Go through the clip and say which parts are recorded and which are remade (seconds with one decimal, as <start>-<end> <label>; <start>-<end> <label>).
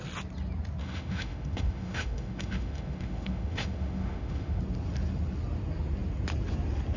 0.0-0.8 recorded; 0.8-4.6 remade; 4.6-7.0 recorded